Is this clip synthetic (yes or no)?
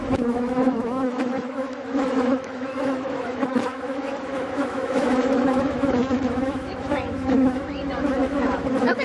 yes